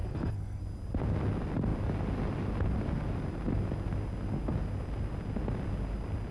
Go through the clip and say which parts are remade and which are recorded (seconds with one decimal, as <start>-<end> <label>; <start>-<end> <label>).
0.0-0.6 remade; 0.6-6.3 recorded